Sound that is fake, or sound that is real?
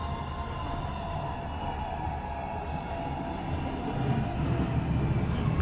real